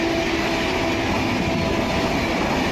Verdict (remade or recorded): recorded